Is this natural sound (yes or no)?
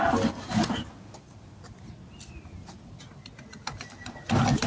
yes